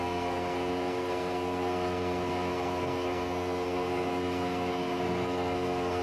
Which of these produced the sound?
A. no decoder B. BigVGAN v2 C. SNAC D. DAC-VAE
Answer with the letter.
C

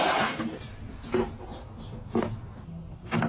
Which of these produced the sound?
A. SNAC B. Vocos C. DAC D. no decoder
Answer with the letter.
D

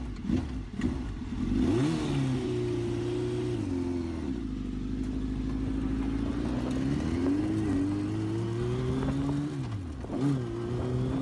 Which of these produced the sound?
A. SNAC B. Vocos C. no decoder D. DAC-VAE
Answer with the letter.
C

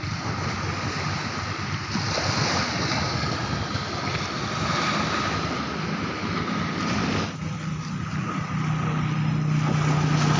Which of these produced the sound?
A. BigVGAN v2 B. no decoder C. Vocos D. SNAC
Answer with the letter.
B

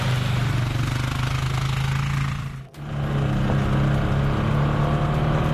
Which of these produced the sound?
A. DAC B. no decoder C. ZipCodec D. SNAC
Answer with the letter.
B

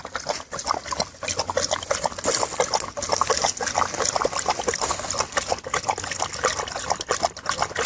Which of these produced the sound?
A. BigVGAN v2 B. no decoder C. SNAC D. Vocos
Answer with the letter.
B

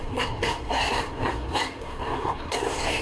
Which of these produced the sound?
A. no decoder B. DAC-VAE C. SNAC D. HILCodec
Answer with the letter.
C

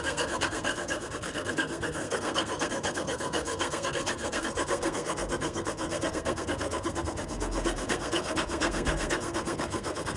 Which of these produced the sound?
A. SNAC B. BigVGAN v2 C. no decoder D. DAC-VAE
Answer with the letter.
A